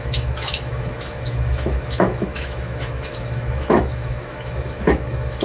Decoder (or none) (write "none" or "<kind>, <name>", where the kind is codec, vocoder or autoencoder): autoencoder, DAC-VAE